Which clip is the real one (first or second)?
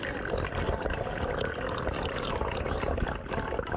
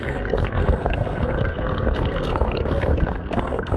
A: first